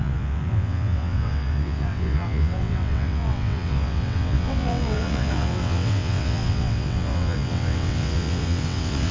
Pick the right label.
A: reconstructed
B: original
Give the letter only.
A